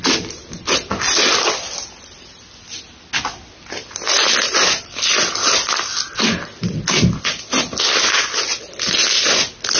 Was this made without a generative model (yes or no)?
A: yes